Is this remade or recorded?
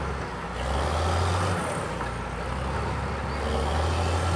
recorded